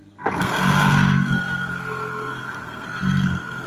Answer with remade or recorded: remade